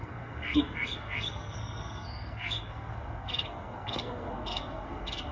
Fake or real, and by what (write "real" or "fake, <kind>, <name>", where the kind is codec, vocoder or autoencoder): fake, codec, SNAC